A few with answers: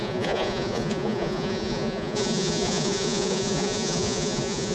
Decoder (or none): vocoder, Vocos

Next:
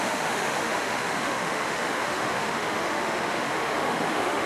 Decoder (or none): autoencoder, DAC-VAE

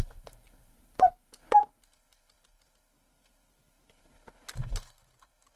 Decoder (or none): none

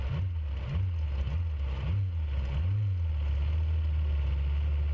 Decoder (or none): none